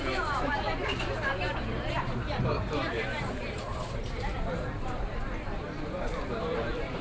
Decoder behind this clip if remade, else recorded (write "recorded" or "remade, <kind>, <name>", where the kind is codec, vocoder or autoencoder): remade, vocoder, BigVGAN v2